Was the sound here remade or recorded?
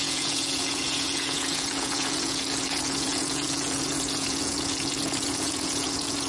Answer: remade